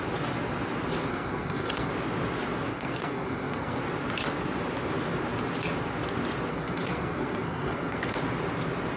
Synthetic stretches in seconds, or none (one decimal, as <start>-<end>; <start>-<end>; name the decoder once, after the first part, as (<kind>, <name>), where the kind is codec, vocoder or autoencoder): 1.1-1.9 (codec, SNAC); 2.7-3.8; 6.5-8.2